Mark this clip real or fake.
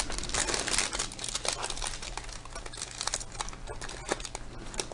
real